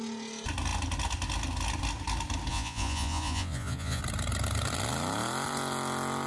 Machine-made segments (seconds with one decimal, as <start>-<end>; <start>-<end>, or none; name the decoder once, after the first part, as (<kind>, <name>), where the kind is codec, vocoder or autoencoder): 2.5-4.0 (vocoder, Vocos)